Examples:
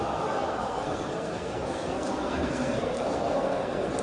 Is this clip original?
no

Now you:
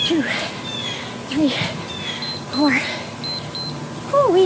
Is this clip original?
yes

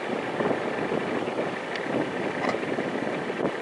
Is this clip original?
yes